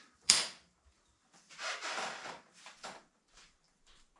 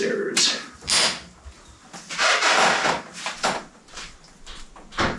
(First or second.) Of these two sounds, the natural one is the second